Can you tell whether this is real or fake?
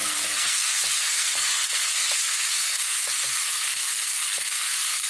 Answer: fake